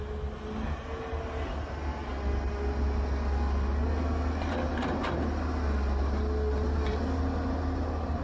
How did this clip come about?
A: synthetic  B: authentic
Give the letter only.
B